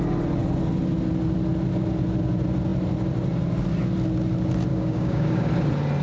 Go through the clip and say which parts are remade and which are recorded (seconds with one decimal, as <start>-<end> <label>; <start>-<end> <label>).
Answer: 0.0-4.7 recorded; 4.7-5.5 remade; 5.5-6.0 recorded